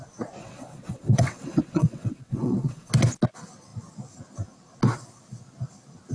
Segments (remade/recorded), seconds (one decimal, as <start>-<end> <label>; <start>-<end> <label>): 0.0-0.4 recorded; 0.4-2.9 remade; 2.9-6.1 recorded